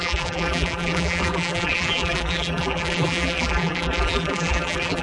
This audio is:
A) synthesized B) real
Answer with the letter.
A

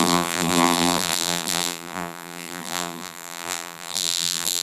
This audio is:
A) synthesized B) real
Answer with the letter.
A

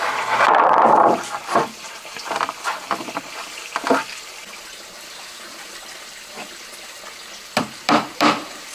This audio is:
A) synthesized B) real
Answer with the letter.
A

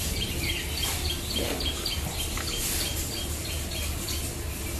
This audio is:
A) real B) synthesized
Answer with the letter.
A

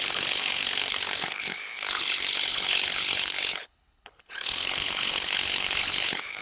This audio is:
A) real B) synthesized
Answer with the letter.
B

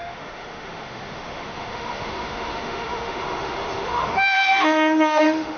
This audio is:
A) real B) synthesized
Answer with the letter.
B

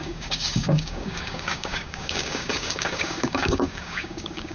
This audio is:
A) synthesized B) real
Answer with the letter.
A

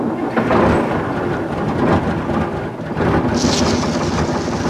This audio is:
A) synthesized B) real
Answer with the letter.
B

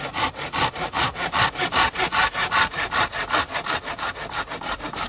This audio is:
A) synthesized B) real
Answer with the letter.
B